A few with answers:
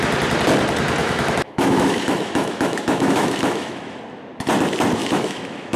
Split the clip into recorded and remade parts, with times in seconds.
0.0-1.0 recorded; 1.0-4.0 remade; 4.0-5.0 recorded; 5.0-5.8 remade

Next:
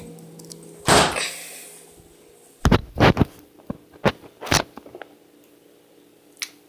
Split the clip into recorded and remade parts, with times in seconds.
0.0-6.7 recorded

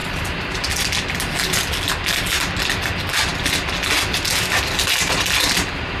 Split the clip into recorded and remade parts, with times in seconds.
0.0-6.0 recorded

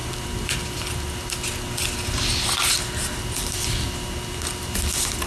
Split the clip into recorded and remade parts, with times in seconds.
0.0-5.3 recorded